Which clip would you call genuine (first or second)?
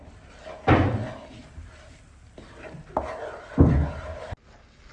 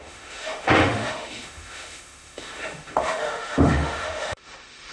first